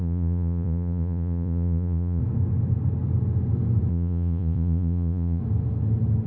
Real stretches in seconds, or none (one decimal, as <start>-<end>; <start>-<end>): 2.2-3.9; 5.4-6.3